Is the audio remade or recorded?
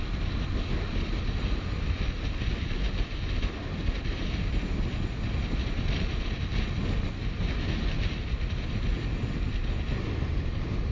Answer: recorded